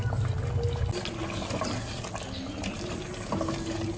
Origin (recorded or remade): recorded